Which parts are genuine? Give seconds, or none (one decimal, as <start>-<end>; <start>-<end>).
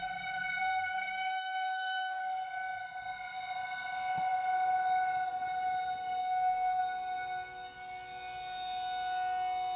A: 0.0-0.6; 2.2-6.2; 6.8-9.8